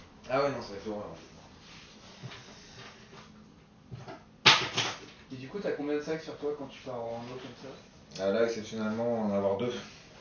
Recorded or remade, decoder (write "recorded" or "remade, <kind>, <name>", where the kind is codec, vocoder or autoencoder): recorded